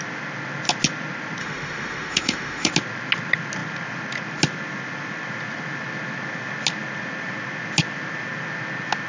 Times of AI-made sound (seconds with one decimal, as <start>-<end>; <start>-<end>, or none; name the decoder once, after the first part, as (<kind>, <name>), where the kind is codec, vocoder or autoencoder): 1.4-2.7 (autoencoder, DAC-VAE)